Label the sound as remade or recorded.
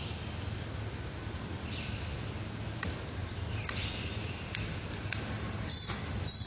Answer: recorded